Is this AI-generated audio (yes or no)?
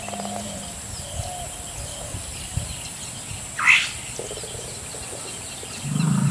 no